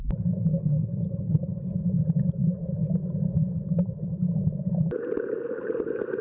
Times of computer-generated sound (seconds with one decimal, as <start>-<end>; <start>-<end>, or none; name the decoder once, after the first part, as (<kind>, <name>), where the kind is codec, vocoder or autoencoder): 0.5-1.7 (codec, HILCodec)